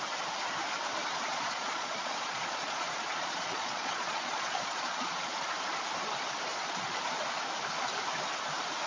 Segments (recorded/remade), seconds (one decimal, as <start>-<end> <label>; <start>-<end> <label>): 0.0-1.3 recorded; 1.3-5.1 remade; 5.1-6.5 recorded; 6.5-7.0 remade; 7.0-8.9 recorded